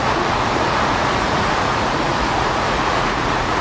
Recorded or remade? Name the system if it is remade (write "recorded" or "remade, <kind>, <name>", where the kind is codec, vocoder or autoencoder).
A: remade, vocoder, Vocos